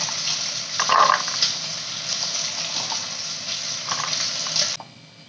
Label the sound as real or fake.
real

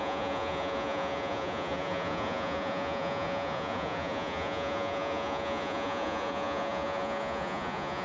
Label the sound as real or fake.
fake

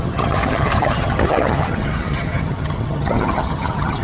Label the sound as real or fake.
fake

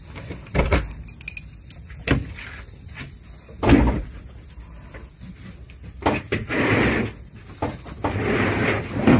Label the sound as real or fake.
real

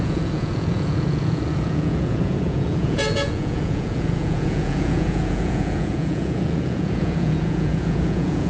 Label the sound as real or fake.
fake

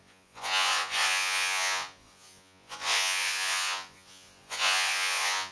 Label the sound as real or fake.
fake